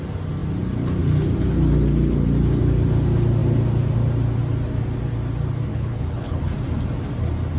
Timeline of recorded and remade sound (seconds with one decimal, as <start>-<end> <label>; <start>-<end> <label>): 0.0-5.7 recorded; 5.7-6.4 remade; 6.4-7.6 recorded